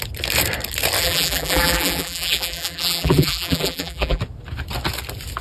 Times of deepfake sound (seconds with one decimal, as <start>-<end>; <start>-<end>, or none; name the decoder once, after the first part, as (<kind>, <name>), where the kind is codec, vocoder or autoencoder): 1.0-4.2 (vocoder, BigVGAN v2)

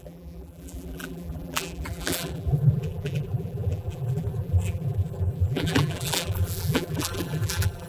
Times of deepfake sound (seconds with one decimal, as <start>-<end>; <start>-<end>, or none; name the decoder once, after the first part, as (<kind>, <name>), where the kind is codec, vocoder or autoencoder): 0.0-7.9 (vocoder, BigVGAN v2)